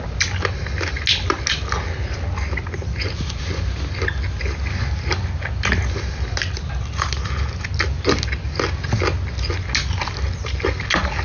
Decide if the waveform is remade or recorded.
recorded